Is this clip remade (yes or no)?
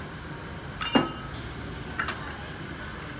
no